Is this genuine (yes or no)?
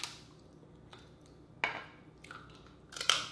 yes